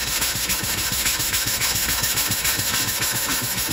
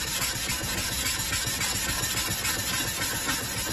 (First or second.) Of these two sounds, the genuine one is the second